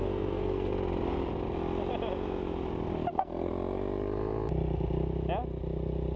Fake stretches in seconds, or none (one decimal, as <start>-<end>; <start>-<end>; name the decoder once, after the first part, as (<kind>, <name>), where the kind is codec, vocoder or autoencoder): 0.0-0.7 (codec, SNAC); 3.1-3.5